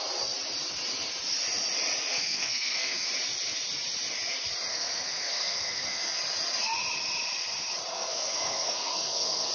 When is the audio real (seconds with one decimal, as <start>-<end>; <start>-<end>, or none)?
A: 0.0-2.1; 3.1-4.7; 6.2-7.9